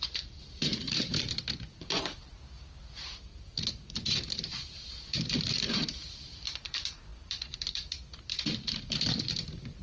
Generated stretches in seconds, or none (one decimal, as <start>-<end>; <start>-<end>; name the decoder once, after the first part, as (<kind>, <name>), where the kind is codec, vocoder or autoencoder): 0.0-9.8 (vocoder, BigVGAN v2)